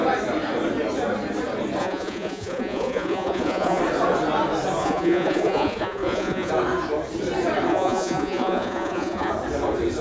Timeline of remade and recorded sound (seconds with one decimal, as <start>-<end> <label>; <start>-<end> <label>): 0.0-1.8 recorded; 1.8-3.8 remade; 3.8-4.8 recorded; 4.8-6.5 remade; 6.5-7.7 recorded; 7.7-9.3 remade; 9.3-10.0 recorded